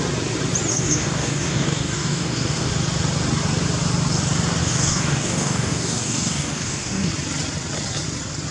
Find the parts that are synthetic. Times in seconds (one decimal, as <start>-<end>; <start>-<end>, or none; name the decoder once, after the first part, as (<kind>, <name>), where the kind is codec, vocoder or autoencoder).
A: 0.7-2.7 (codec, DAC); 4.6-7.1